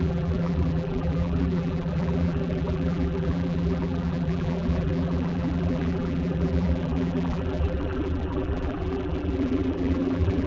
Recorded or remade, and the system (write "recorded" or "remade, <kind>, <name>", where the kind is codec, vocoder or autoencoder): remade, vocoder, BigVGAN v2